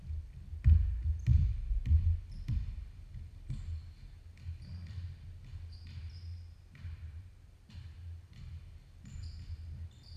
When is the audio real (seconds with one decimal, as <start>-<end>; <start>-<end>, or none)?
0.0-6.3; 7.7-10.2